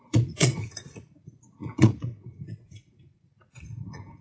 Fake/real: fake